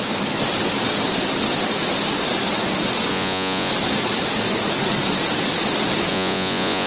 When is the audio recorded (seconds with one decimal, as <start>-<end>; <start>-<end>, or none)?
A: 0.0-3.1; 3.7-6.1